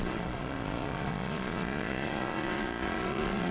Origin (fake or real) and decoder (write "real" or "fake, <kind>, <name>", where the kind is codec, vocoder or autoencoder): fake, vocoder, Vocos